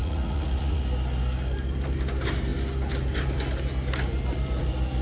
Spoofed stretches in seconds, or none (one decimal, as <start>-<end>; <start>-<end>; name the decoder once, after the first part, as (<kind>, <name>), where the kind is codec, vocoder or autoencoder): 0.0-0.8 (vocoder, Vocos)